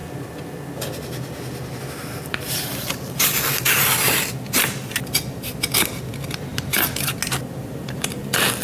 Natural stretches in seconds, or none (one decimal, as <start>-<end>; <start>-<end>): 0.0-1.8; 6.5-7.6